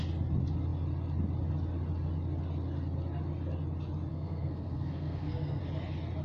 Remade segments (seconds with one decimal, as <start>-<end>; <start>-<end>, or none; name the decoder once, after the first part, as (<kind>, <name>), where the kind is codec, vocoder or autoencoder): 4.1-5.6 (codec, SNAC)

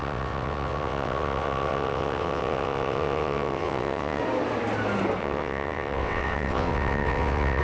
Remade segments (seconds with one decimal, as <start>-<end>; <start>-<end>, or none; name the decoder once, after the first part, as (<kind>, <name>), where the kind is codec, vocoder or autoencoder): 0.0-4.2 (vocoder, WaveNeXt); 5.2-7.6

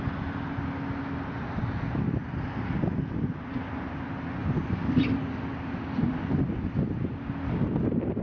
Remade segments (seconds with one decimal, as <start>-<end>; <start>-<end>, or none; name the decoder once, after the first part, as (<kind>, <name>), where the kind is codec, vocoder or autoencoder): none

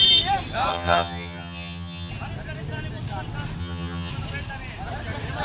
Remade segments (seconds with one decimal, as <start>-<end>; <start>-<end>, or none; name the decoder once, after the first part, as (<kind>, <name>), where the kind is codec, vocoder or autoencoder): 0.7-2.1 (vocoder, HiFi-GAN); 3.6-4.1

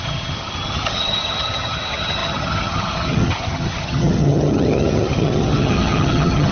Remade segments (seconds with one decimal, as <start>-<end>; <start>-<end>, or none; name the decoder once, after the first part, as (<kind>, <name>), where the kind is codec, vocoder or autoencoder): 0.0-6.5 (vocoder, HiFi-GAN)

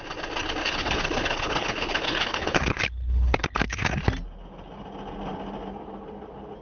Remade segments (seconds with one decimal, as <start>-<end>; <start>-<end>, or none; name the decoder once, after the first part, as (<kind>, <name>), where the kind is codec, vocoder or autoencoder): 0.6-4.0 (codec, HILCodec)

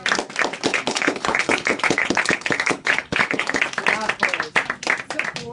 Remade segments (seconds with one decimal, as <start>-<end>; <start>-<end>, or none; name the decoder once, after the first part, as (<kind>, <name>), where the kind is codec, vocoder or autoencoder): 0.7-3.6 (codec, HILCodec)